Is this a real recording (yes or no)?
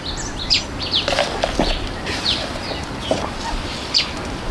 yes